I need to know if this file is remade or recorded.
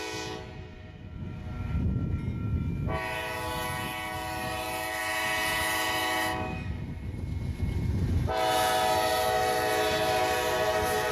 recorded